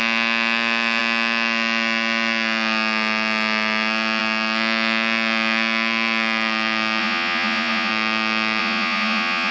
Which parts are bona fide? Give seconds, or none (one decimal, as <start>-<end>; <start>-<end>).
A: 0.0-7.0; 7.9-8.6